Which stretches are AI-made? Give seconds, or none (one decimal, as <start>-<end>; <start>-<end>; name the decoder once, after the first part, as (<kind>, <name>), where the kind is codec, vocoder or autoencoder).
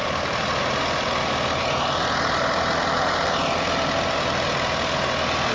none